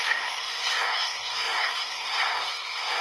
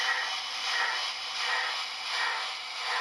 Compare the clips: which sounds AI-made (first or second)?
first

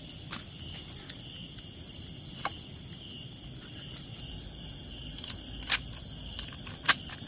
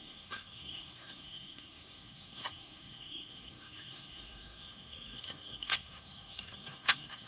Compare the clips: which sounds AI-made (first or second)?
second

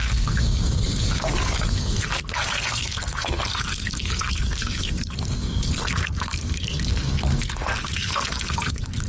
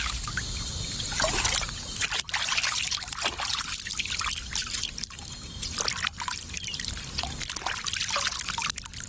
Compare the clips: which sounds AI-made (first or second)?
first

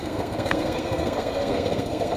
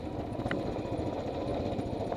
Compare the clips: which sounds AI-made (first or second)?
first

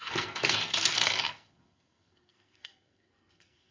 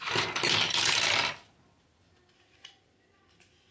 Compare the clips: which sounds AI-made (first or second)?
first